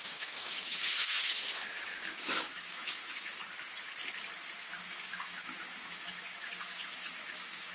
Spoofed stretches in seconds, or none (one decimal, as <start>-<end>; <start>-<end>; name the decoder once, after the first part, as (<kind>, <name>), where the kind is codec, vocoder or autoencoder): 0.0-3.4 (autoencoder, DAC-VAE); 4.7-7.7